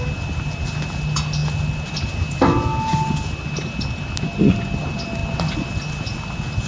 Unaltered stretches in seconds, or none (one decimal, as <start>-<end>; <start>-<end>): 0.0-6.7